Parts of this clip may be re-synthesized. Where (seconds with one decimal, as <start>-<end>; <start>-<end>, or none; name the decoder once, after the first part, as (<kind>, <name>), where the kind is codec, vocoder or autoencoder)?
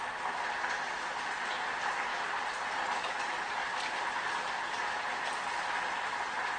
none